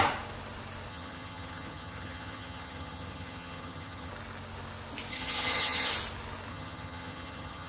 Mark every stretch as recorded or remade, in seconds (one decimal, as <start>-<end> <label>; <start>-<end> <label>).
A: 0.0-0.9 recorded; 0.9-4.1 remade; 4.1-5.1 recorded; 5.1-5.9 remade; 5.9-6.5 recorded; 6.5-7.7 remade